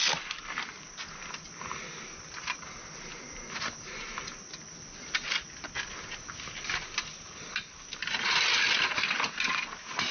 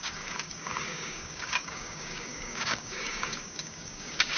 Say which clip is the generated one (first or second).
second